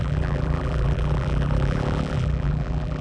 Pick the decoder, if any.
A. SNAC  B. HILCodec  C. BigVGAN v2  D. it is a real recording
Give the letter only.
C